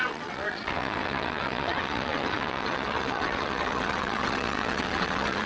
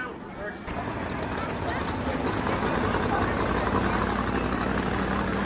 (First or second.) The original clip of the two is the second